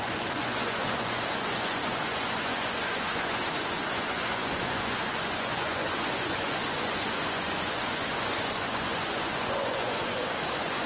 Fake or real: fake